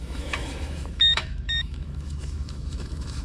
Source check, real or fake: fake